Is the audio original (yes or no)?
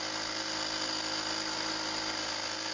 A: yes